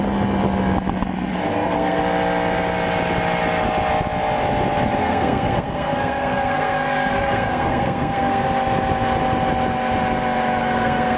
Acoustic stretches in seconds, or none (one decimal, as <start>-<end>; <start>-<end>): 0.0-1.3; 2.0-5.0; 8.4-10.6